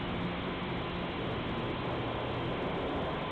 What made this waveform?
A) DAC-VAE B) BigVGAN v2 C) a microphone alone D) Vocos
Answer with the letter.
C